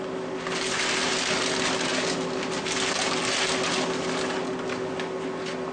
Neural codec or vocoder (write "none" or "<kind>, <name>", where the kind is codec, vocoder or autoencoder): none